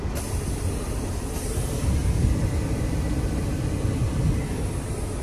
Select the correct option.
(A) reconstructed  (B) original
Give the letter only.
B